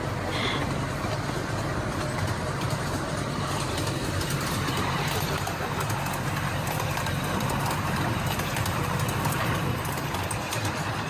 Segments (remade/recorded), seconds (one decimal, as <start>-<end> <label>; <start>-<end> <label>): 0.0-1.7 recorded; 1.7-5.6 remade; 5.6-11.1 recorded